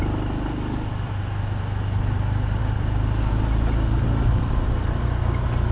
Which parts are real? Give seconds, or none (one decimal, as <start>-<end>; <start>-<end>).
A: 0.0-5.7

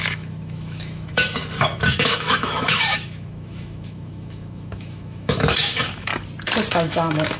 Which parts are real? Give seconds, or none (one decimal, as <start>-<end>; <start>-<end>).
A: 6.1-6.7

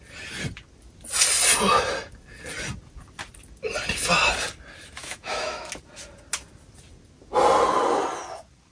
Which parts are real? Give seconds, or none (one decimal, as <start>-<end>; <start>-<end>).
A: 0.0-5.0; 5.7-8.7

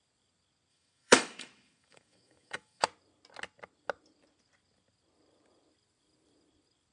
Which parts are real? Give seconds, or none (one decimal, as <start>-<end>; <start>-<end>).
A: 0.0-0.7; 2.8-6.9